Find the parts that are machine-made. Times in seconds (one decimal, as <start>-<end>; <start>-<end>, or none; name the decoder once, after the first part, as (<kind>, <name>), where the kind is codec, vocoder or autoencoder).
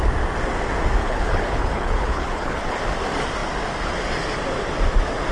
1.0-2.8 (codec, HILCodec)